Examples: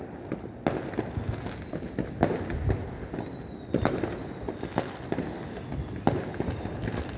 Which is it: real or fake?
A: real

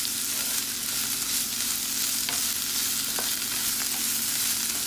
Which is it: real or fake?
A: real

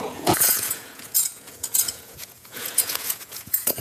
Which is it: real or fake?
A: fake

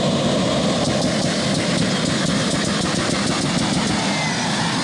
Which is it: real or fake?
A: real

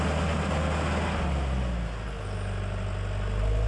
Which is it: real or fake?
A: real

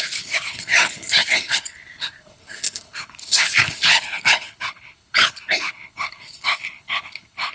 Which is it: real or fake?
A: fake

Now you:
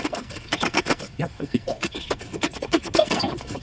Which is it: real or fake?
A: fake